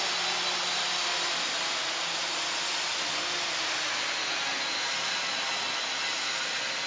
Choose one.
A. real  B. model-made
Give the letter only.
A